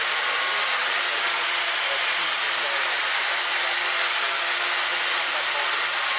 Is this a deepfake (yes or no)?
no